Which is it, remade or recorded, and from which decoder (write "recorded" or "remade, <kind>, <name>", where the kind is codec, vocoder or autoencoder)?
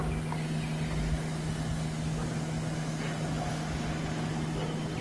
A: recorded